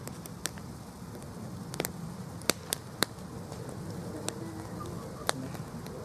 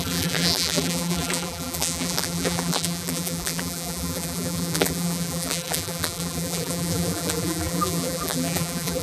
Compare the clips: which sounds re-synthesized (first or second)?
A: second